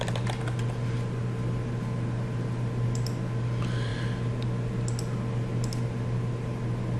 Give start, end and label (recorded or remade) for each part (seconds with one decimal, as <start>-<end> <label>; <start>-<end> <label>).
0.0-7.0 recorded